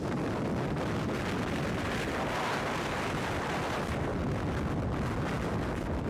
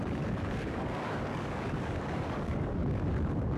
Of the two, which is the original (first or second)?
first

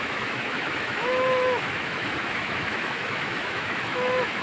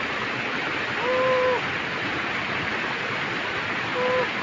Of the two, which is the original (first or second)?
second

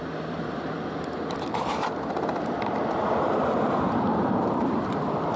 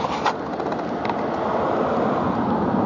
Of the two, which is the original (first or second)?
second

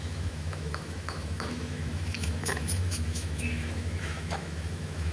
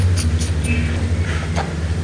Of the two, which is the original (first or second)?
second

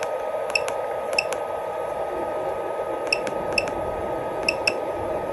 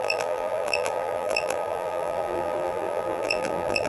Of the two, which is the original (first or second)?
first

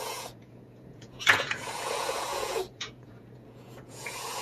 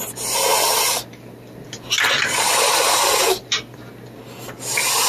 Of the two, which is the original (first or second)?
second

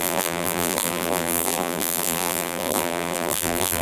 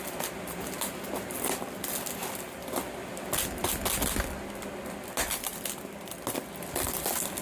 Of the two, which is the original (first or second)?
second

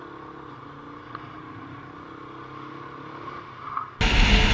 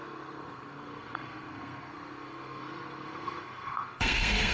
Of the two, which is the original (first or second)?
first